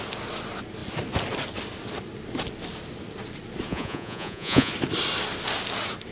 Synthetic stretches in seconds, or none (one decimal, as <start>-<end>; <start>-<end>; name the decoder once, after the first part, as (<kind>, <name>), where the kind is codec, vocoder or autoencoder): 3.7-4.7 (vocoder, Vocos)